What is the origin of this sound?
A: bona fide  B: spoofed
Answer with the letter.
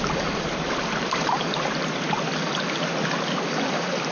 A